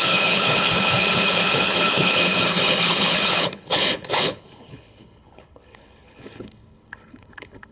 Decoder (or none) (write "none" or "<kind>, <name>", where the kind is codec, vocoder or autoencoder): codec, HILCodec